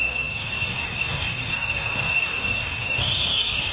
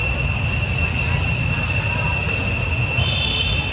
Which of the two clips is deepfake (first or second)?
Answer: first